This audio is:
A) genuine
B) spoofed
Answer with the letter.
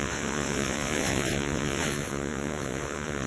B